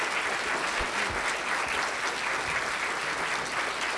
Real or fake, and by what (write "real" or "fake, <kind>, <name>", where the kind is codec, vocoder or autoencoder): real